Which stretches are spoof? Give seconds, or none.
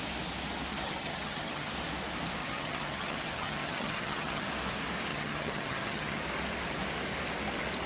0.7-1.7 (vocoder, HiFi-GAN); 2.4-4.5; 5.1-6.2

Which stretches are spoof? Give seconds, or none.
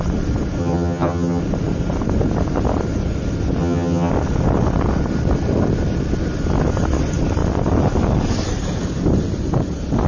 0.6-1.4 (vocoder, HiFi-GAN); 3.6-4.1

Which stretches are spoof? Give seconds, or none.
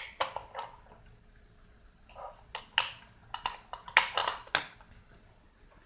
none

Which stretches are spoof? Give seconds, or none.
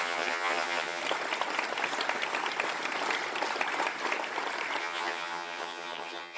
0.0-1.0 (vocoder, HiFi-GAN); 4.8-6.4